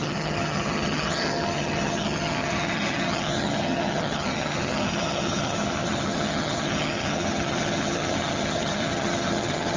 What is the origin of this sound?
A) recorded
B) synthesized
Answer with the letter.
B